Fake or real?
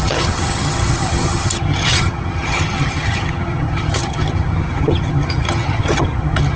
fake